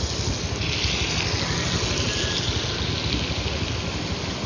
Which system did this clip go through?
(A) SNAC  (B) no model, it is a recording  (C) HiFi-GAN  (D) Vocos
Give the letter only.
B